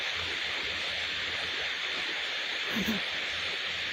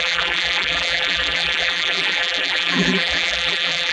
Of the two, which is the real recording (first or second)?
first